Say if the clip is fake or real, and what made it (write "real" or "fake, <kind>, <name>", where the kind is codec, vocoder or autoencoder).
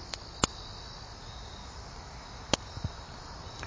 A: real